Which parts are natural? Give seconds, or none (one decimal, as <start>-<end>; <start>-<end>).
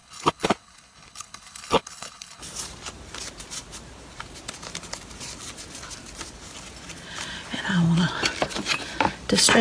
2.4-9.6